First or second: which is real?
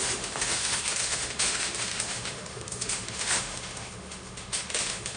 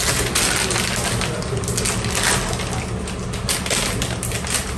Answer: second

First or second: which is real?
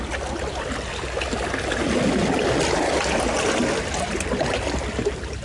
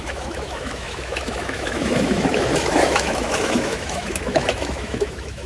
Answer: first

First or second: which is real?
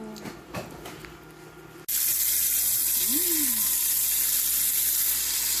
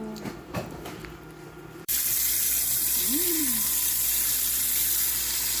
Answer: first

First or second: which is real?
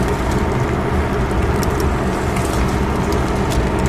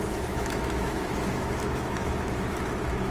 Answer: first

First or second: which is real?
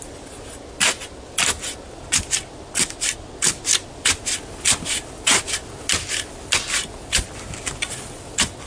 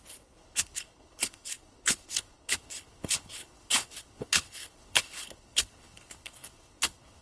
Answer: first